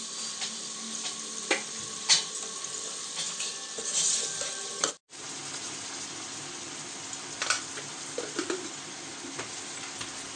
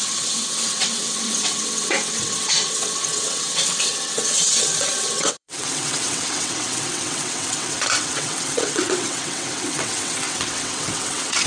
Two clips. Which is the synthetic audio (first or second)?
second